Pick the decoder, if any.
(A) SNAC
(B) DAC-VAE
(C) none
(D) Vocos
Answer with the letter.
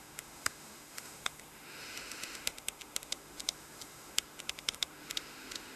B